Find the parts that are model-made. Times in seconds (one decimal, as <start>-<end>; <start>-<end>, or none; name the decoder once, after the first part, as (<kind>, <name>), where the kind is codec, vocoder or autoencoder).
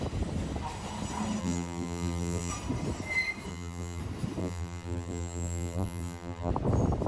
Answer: 1.4-2.5 (vocoder, BigVGAN v2); 3.5-4.0; 4.4-6.5